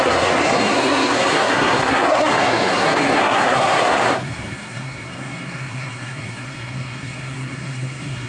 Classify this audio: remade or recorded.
remade